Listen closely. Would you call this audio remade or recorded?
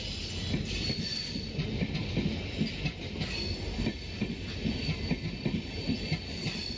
recorded